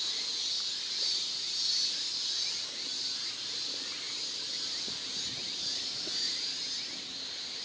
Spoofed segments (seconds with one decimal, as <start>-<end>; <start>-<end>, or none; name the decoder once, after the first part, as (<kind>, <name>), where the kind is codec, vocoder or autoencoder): none